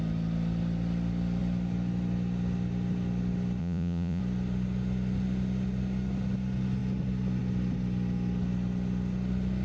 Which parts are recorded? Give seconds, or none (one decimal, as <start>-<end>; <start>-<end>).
0.0-3.6; 4.2-9.6